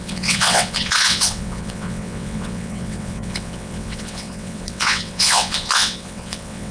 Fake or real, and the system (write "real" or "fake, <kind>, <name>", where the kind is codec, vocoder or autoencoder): fake, vocoder, WaveNeXt